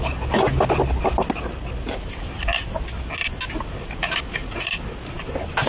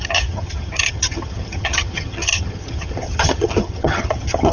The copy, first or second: second